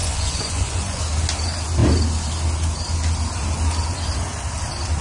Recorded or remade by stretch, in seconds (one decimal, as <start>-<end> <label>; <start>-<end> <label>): 0.0-1.0 remade; 1.0-5.0 recorded